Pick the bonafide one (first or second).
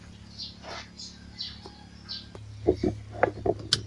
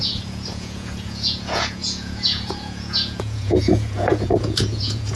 first